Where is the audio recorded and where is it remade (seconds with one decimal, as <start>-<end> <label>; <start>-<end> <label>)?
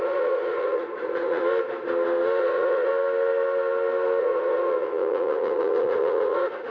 0.0-1.4 remade; 1.4-2.4 recorded; 2.4-2.9 remade; 2.9-4.2 recorded; 4.2-6.7 remade